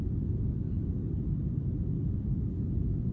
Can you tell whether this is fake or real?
fake